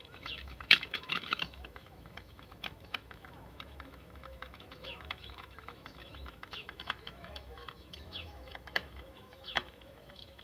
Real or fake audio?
fake